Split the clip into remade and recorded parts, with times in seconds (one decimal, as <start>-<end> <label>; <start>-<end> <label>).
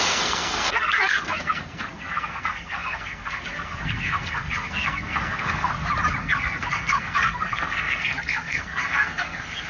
0.0-5.7 remade; 5.7-6.2 recorded; 6.2-9.7 remade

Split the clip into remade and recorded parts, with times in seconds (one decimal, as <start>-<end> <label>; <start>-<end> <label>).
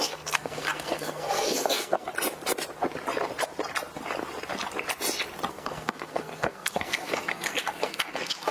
0.0-2.1 remade; 2.1-5.5 recorded; 5.5-8.5 remade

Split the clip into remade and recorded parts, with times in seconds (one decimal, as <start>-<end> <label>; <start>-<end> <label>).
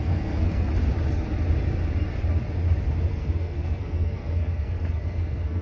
0.0-0.7 remade; 0.7-3.1 recorded; 3.1-5.6 remade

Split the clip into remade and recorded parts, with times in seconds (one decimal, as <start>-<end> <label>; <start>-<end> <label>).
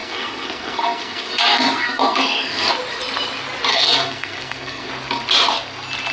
0.0-2.7 remade; 2.7-3.7 recorded; 3.7-4.9 remade; 4.9-6.1 recorded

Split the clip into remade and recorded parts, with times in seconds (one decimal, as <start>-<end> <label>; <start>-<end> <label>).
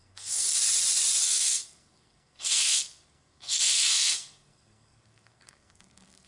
0.0-0.6 remade; 0.6-1.2 recorded; 1.2-6.3 remade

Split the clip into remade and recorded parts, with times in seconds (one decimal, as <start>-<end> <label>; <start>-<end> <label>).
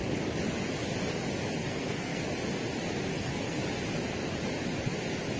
0.0-1.6 recorded; 1.6-2.2 remade; 2.2-3.1 recorded; 3.1-3.6 remade; 3.6-5.4 recorded